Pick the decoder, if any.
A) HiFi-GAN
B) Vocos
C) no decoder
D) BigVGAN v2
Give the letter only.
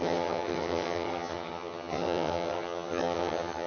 A